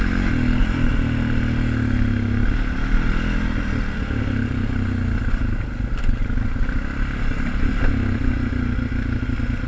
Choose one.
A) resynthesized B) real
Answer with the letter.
B